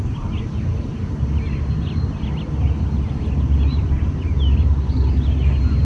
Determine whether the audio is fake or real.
real